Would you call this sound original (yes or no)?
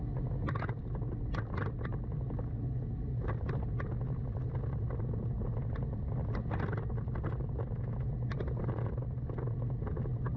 yes